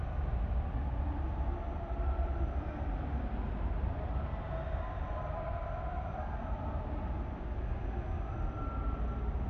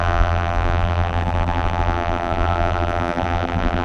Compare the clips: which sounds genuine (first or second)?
first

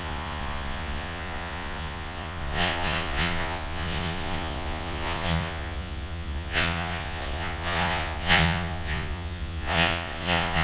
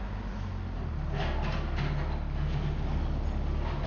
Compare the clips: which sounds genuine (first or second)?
second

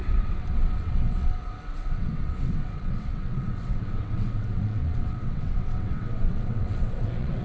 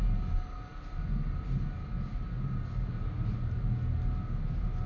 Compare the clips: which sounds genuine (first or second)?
second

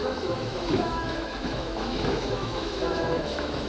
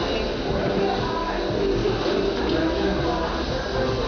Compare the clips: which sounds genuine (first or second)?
second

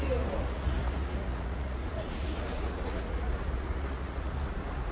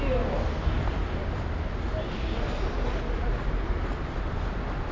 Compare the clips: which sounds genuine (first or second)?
second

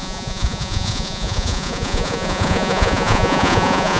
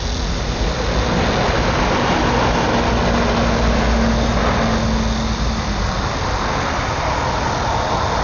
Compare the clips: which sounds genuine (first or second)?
second